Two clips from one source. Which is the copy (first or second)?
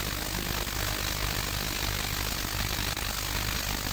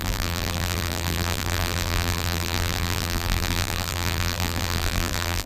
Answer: second